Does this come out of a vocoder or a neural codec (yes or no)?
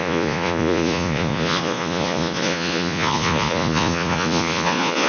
yes